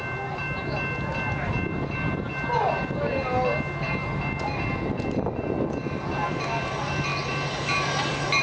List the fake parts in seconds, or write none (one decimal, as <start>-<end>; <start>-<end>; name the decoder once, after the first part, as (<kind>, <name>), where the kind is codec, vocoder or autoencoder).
none